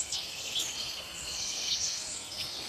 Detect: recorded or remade remade